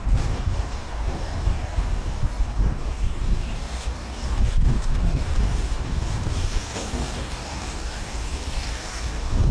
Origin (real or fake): fake